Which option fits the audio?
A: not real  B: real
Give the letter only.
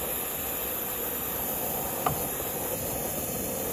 B